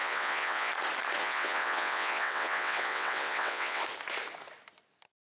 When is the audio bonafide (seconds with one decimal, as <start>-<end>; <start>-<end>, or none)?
0.7-1.2; 3.8-5.4